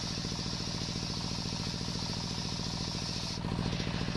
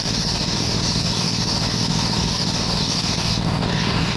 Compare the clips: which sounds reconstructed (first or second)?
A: second